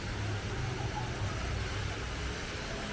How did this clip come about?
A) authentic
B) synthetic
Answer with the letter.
A